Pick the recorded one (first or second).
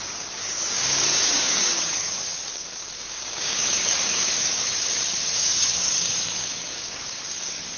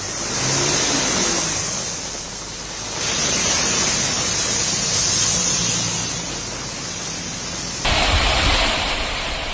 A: second